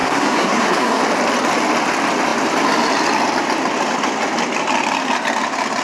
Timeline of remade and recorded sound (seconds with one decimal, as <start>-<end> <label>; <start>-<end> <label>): 0.0-1.0 remade; 1.0-5.8 recorded